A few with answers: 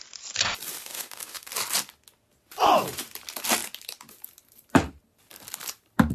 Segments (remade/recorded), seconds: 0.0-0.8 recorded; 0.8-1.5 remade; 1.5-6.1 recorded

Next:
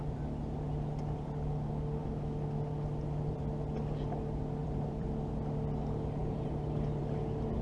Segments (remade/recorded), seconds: 0.0-4.6 recorded; 4.6-5.3 remade; 5.3-7.6 recorded

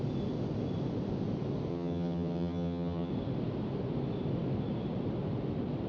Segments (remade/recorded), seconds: 0.0-1.7 recorded; 1.7-3.1 remade; 3.1-5.9 recorded

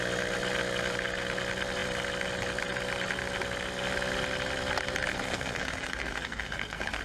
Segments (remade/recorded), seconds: 0.0-5.1 recorded; 5.1-7.0 remade

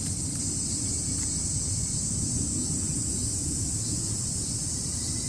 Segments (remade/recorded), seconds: 0.0-5.3 recorded

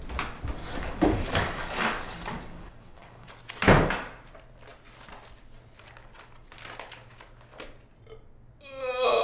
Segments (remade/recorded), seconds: 0.0-0.6 recorded; 0.6-3.3 remade; 3.3-9.2 recorded

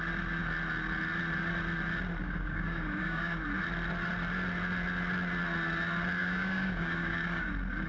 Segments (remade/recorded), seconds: 0.0-2.2 recorded; 2.2-3.4 remade; 3.4-6.2 recorded; 6.2-7.5 remade; 7.5-7.9 recorded

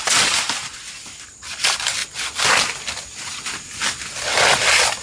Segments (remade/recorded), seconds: 0.0-5.0 recorded